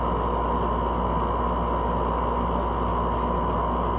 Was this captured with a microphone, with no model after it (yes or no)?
yes